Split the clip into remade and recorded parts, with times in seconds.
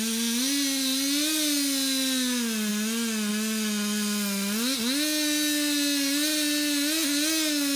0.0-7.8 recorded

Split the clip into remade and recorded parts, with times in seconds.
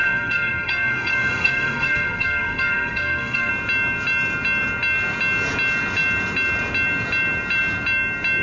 0.0-3.5 remade; 3.5-8.4 recorded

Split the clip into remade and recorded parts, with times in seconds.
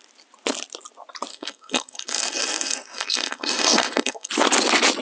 0.0-1.3 recorded; 1.3-4.3 remade; 4.3-5.0 recorded